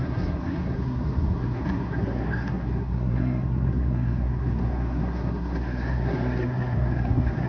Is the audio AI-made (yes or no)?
yes